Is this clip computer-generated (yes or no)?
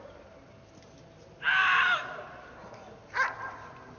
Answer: no